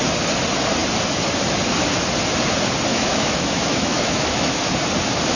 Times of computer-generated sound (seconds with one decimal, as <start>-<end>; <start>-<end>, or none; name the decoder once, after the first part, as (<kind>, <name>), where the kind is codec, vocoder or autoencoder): 2.9-4.6 (autoencoder, DAC-VAE)